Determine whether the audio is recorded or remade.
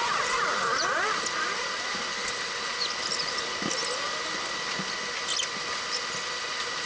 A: recorded